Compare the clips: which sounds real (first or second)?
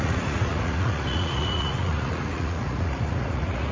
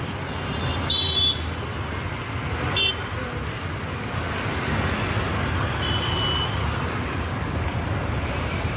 second